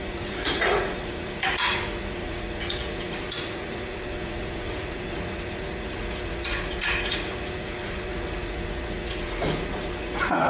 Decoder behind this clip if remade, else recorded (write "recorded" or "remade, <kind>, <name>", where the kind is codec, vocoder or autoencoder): remade, vocoder, Vocos